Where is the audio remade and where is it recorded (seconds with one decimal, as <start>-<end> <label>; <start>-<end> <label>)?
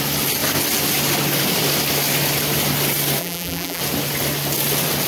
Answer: 0.0-3.2 recorded; 3.2-3.8 remade; 3.8-5.1 recorded